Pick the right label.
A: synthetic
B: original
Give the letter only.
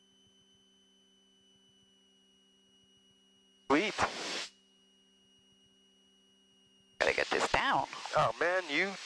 B